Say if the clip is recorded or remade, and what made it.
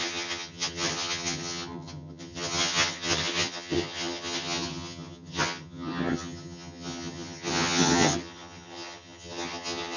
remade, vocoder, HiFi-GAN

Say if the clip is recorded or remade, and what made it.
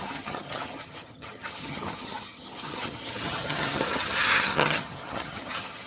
remade, vocoder, HiFi-GAN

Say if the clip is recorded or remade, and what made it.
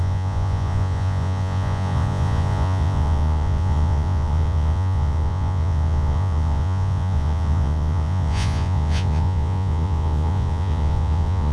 remade, vocoder, Vocos